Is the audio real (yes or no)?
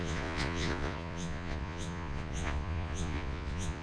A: no